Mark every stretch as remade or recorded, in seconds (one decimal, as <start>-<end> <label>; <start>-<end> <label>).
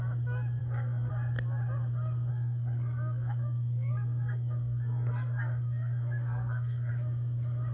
0.0-0.6 recorded; 0.6-1.1 remade; 1.1-2.3 recorded; 2.3-6.9 remade; 6.9-7.7 recorded